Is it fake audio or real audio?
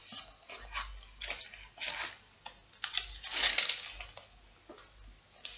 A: real